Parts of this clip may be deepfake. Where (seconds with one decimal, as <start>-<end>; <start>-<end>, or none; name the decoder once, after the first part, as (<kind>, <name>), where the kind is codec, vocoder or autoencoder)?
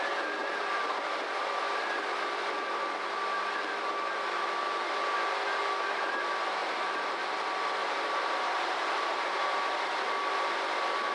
6.6-7.2 (vocoder, BigVGAN v2); 7.8-8.9